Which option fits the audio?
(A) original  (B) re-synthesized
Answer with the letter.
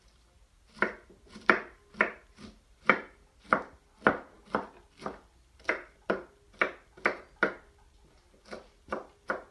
A